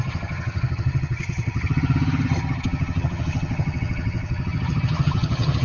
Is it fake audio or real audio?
fake